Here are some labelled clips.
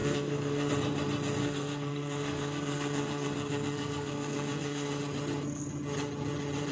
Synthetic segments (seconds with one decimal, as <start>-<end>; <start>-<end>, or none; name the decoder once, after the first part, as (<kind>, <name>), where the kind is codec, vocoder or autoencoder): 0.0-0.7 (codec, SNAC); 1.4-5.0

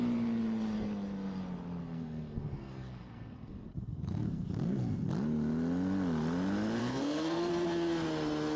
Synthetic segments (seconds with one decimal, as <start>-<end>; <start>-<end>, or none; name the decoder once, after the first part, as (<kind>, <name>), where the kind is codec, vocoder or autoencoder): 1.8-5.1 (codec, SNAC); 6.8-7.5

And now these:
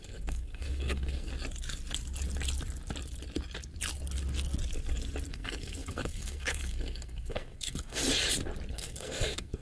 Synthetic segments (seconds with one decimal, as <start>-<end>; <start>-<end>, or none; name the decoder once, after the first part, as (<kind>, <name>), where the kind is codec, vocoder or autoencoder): 0.0-1.3 (codec, SNAC); 5.3-8.0; 8.7-9.6

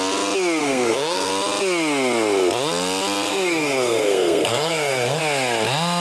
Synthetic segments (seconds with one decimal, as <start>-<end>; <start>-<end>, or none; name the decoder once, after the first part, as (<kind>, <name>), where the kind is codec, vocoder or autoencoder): 0.6-1.3 (codec, SNAC); 3.3-5.2

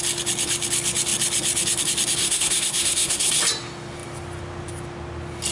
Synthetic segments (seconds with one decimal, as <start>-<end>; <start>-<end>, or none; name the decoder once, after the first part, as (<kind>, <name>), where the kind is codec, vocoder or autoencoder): 2.2-3.3 (codec, SNAC)

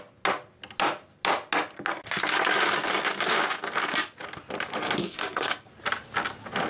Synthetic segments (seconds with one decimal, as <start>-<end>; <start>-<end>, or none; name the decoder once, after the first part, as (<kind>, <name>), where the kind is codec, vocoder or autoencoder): 5.0-5.7 (codec, SNAC)

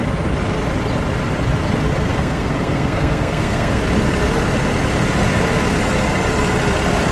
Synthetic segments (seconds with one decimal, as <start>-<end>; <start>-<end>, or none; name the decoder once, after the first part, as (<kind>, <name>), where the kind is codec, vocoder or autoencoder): 2.1-3.8 (codec, SNAC)

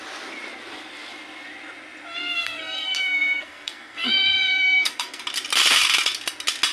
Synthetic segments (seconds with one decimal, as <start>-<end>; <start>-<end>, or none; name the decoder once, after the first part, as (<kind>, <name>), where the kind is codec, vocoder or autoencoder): 2.2-5.2 (codec, SNAC)